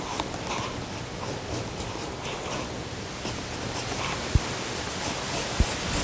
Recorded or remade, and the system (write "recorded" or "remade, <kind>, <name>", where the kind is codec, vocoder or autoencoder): recorded